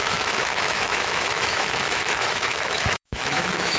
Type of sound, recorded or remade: remade